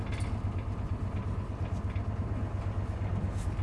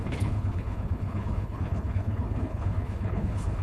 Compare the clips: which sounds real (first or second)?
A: first